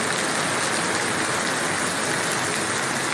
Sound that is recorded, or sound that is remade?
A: recorded